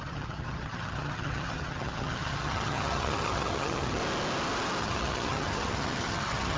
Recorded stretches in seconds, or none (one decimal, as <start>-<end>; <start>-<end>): 4.0-4.8